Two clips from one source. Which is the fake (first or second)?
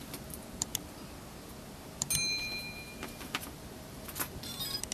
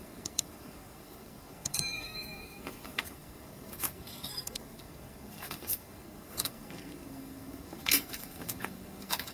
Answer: second